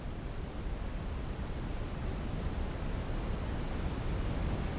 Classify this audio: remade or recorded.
recorded